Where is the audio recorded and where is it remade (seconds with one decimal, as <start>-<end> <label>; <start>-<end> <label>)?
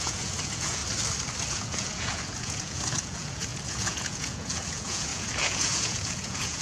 0.0-0.8 remade; 0.8-1.5 recorded; 1.5-6.6 remade